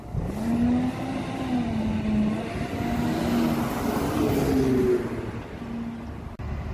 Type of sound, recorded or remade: recorded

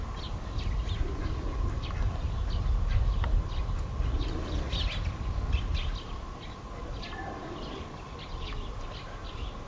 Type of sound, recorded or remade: recorded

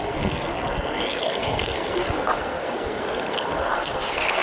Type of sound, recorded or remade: remade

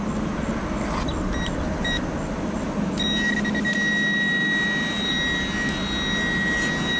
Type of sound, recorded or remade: recorded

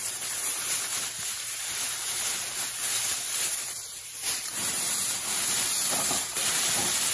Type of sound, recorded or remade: remade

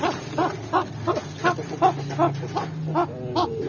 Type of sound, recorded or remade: recorded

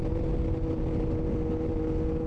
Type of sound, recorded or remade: recorded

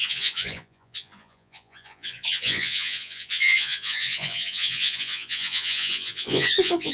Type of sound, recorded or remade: remade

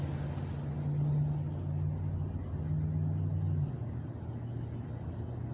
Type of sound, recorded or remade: recorded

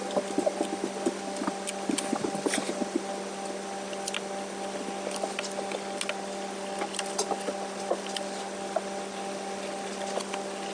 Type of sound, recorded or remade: recorded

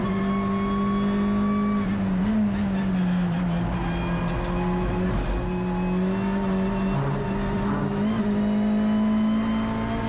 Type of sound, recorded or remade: recorded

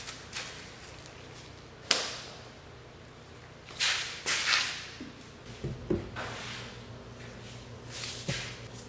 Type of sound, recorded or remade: recorded